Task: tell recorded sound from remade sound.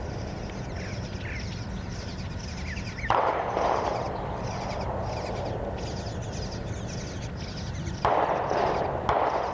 recorded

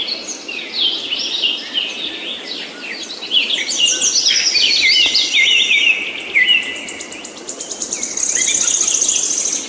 recorded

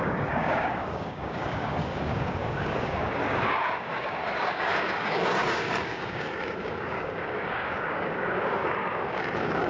remade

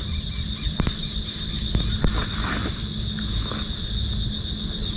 recorded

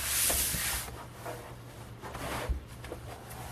recorded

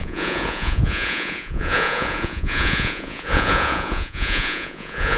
remade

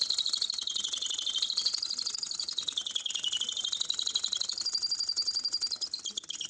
recorded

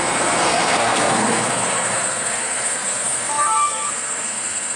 remade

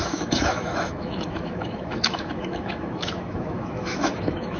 remade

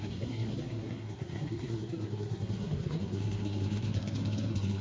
remade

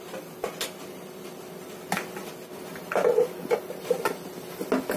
recorded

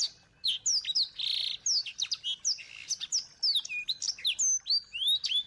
recorded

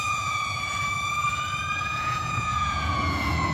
remade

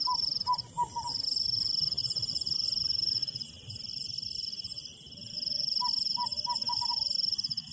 recorded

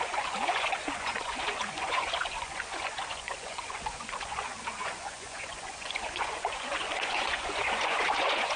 remade